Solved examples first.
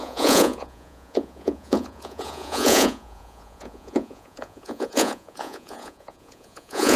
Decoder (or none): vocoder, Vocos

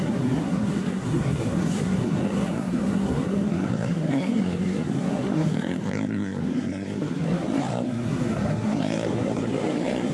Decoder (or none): codec, SNAC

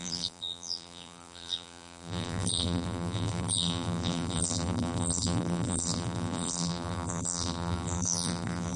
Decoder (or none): vocoder, BigVGAN v2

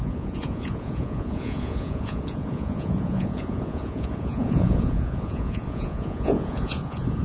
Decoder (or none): vocoder, Vocos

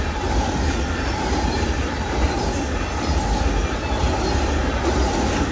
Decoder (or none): none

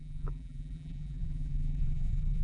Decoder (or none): vocoder, BigVGAN v2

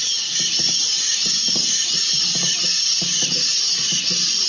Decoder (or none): none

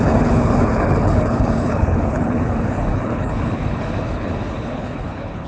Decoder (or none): codec, HILCodec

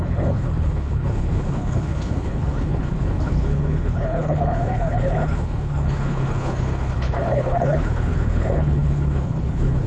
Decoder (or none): codec, HILCodec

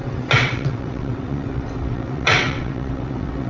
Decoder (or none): vocoder, WaveNeXt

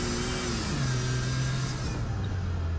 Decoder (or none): none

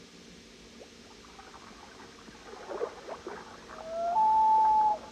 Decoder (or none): none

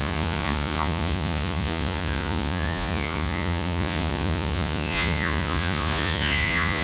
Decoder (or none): vocoder, Vocos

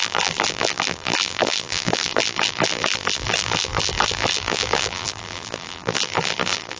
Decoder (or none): vocoder, BigVGAN v2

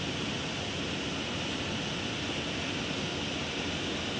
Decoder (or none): none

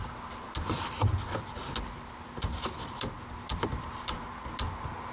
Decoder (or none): none